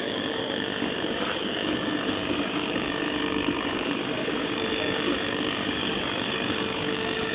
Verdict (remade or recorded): remade